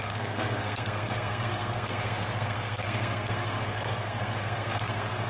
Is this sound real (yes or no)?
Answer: no